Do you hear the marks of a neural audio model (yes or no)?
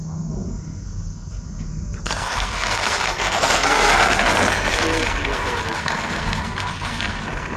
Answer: yes